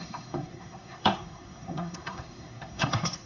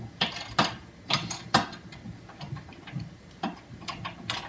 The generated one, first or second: first